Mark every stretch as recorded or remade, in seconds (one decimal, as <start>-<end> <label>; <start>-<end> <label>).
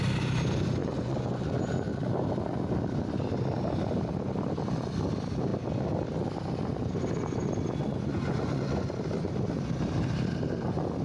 0.0-0.8 recorded; 0.8-1.6 remade; 1.6-7.8 recorded; 7.8-8.9 remade; 8.9-11.0 recorded